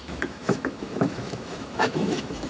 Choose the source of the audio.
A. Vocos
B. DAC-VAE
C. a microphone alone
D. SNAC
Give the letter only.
B